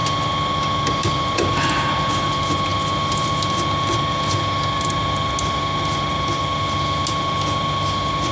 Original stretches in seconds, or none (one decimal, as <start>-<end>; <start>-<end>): 0.0-8.3